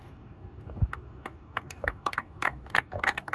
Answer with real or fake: fake